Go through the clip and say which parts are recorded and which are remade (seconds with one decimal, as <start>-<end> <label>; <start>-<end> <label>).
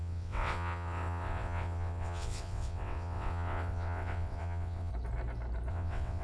0.0-4.9 remade; 4.9-5.7 recorded; 5.7-6.2 remade